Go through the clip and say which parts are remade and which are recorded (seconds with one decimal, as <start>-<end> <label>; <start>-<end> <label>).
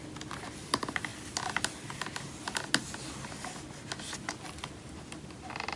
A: 0.0-5.8 recorded